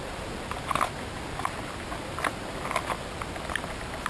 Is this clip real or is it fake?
real